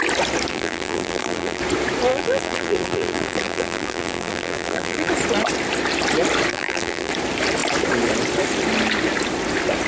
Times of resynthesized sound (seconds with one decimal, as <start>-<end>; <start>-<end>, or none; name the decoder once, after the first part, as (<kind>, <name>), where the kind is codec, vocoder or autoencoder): 0.5-1.6 (vocoder, BigVGAN v2); 2.1-5.1; 6.5-7.1